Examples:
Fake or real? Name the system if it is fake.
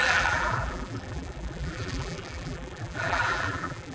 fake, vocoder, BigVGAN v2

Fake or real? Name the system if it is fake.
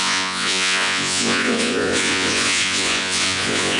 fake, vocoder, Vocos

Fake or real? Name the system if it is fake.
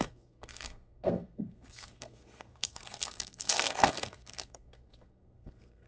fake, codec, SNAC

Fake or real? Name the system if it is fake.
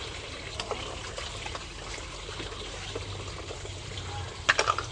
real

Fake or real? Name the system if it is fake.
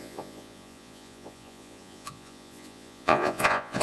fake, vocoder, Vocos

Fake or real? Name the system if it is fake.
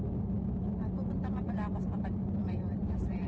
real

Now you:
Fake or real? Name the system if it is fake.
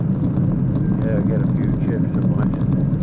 real